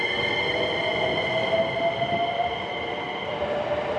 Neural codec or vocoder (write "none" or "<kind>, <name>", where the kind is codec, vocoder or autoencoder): none